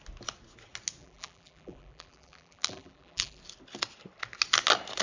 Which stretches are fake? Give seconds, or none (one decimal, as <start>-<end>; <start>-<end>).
1.0-3.4